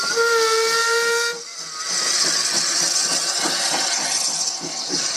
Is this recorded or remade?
recorded